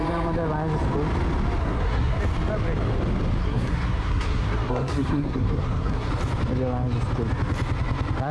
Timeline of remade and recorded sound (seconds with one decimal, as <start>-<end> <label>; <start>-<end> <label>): 0.0-1.6 recorded; 1.6-2.2 remade; 2.2-3.4 recorded; 3.4-6.1 remade; 6.1-8.3 recorded